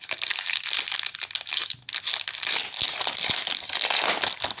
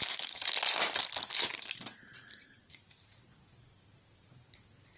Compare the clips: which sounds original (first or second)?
first